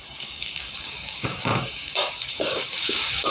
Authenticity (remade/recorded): remade